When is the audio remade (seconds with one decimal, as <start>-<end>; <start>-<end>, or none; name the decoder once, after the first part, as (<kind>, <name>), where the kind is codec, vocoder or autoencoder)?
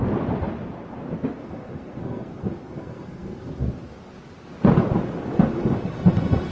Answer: 1.4-3.5 (codec, SNAC)